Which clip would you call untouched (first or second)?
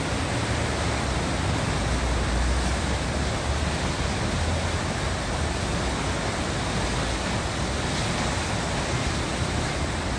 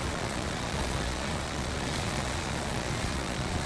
first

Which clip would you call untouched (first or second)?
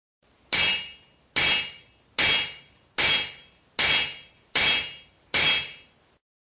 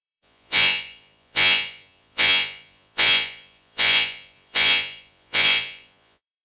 first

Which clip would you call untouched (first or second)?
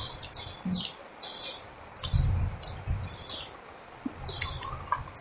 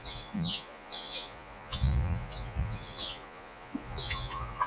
first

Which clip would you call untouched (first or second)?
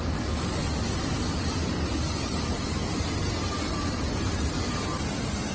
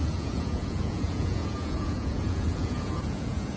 first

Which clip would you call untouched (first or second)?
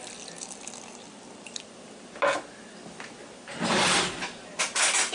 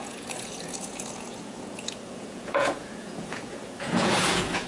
first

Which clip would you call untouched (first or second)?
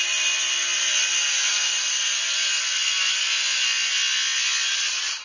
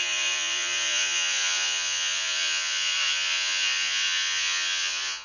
first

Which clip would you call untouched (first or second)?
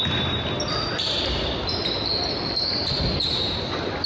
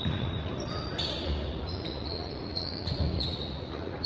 first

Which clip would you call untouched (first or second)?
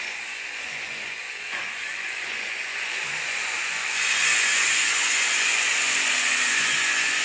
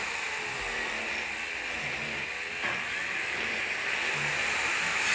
second